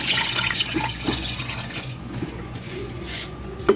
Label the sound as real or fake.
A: fake